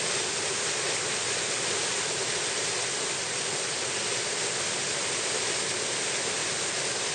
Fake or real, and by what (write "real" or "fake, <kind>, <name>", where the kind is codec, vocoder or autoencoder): real